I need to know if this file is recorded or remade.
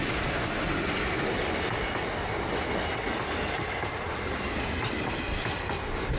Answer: recorded